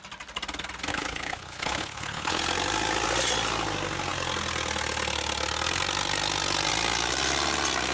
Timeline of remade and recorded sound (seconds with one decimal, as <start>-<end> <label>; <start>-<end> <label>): 0.0-0.9 recorded; 0.9-2.4 remade; 2.4-7.9 recorded